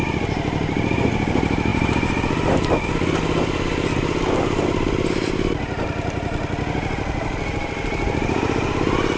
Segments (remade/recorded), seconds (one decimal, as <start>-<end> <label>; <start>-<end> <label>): 0.0-9.2 recorded